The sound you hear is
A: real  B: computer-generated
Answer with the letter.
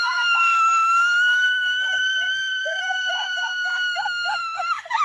B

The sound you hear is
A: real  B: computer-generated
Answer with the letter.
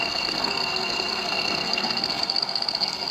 B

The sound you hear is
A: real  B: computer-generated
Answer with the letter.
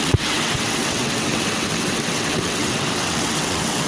B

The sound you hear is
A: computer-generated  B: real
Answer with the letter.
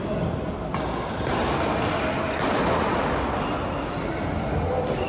B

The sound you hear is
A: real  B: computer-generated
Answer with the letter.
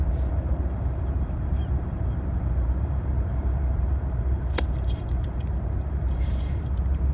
B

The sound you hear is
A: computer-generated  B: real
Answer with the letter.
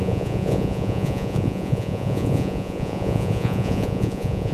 A